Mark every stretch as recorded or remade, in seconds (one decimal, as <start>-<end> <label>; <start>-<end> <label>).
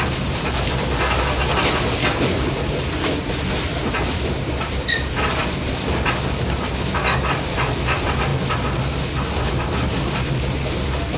0.0-11.2 recorded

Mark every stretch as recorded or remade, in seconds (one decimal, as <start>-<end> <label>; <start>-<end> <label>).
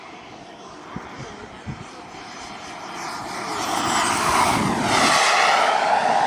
0.0-0.8 remade; 0.8-4.1 recorded; 4.1-4.6 remade; 4.6-5.6 recorded; 5.6-6.3 remade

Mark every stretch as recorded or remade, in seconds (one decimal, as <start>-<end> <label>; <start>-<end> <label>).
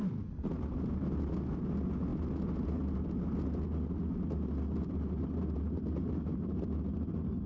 0.0-7.5 recorded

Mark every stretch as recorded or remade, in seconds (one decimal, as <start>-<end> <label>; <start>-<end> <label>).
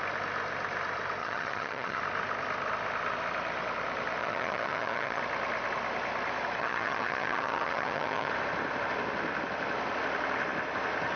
0.0-1.2 recorded; 1.2-2.0 remade; 2.0-4.2 recorded; 4.2-5.2 remade; 5.2-6.6 recorded; 6.6-8.3 remade; 8.3-11.2 recorded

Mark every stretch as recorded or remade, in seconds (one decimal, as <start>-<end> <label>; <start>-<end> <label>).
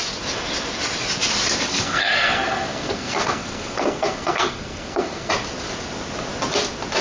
0.0-1.7 recorded; 1.7-5.3 remade; 5.3-7.0 recorded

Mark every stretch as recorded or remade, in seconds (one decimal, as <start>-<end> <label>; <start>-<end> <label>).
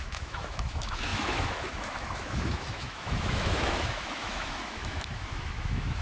0.0-6.0 remade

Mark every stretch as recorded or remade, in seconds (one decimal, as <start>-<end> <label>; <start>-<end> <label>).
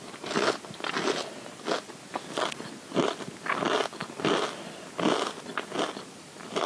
0.0-6.7 recorded